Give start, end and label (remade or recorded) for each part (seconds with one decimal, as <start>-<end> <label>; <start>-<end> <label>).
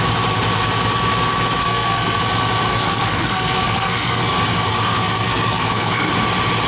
0.0-1.6 recorded; 1.6-2.2 remade; 2.2-2.7 recorded; 2.7-4.3 remade; 4.3-4.7 recorded; 4.7-6.1 remade; 6.1-6.7 recorded